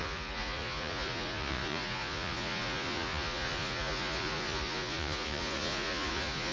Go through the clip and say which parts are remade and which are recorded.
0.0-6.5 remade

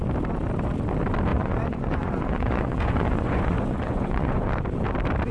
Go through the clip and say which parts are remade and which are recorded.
0.0-1.3 recorded; 1.3-4.5 remade; 4.5-5.3 recorded

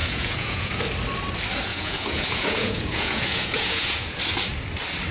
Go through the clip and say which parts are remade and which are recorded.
0.0-0.8 remade; 0.8-1.7 recorded; 1.7-4.2 remade; 4.2-5.1 recorded

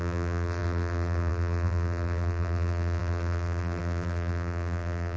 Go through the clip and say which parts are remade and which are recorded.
0.0-5.2 remade

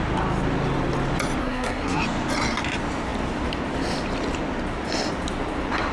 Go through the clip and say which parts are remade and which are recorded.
0.0-1.4 recorded; 1.4-2.0 remade; 2.0-5.9 recorded

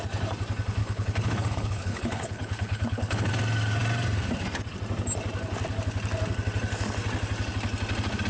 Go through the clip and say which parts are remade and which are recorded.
0.0-0.8 recorded; 0.8-3.3 remade; 3.3-8.3 recorded